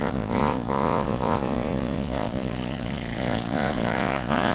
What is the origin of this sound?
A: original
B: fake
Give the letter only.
B